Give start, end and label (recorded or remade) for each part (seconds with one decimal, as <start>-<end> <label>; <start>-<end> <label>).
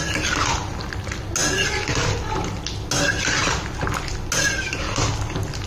0.0-5.7 recorded